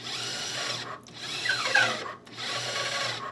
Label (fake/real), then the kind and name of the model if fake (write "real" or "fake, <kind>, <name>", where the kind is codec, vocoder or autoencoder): real